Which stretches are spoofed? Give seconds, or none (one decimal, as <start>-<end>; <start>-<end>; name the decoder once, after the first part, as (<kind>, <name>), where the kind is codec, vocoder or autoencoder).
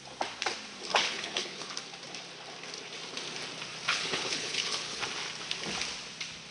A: 0.9-1.7 (codec, HILCodec); 3.9-5.0